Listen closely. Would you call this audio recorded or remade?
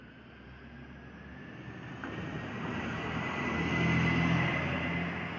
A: recorded